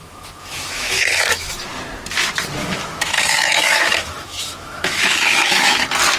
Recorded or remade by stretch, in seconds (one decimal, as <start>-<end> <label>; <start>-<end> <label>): 0.0-1.5 remade; 1.5-2.6 recorded; 2.6-5.8 remade; 5.8-6.2 recorded